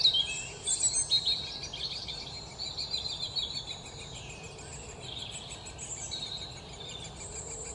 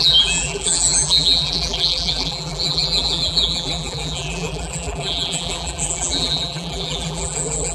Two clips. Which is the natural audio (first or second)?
first